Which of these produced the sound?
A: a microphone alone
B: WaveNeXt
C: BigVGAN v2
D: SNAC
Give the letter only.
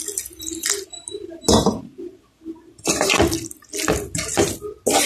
A